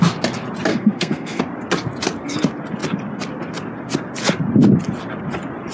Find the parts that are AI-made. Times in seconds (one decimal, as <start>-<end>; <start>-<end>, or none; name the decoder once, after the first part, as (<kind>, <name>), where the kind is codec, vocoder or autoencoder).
0.7-1.4 (codec, SNAC)